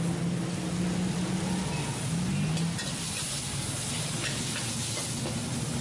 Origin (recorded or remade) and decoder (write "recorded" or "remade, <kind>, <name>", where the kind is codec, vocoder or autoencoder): recorded